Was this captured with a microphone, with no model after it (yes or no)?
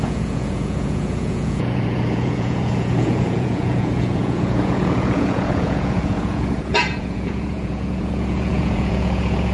no